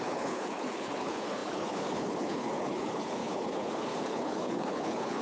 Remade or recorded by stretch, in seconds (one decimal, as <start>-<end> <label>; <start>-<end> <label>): 0.0-5.2 remade